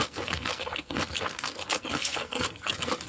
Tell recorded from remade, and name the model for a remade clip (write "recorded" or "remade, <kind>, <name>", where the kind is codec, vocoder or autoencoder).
remade, codec, SNAC